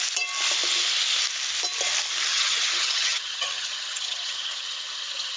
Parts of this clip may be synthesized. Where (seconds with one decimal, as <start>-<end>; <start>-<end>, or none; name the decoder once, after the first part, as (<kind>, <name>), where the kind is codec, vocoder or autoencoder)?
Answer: 2.3-5.4 (vocoder, HiFi-GAN)